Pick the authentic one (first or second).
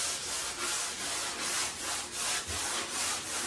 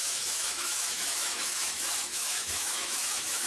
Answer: first